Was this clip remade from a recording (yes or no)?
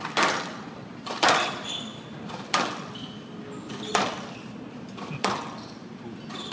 no